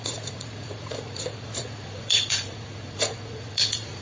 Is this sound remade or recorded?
remade